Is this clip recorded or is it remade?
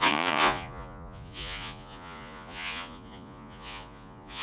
remade